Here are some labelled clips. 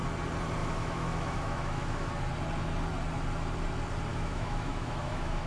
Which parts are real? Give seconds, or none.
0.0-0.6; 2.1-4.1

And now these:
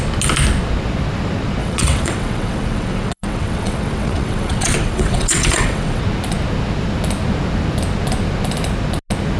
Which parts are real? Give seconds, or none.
0.0-1.6; 6.0-9.4

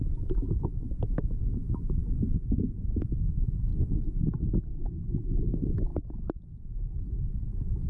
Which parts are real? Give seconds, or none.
2.0-3.2; 3.7-4.6; 5.9-7.9

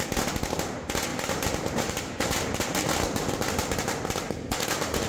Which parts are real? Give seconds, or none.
0.0-5.1